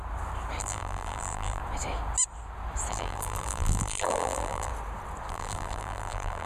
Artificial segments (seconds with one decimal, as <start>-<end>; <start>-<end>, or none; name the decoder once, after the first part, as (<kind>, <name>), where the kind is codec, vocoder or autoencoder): 0.6-1.6 (vocoder, BigVGAN v2); 2.9-4.7; 5.3-6.5